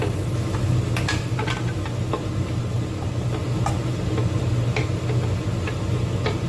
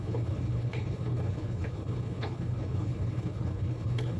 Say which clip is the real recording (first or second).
first